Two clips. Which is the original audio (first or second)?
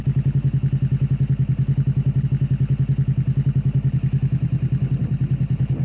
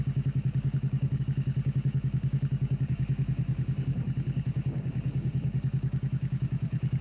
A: first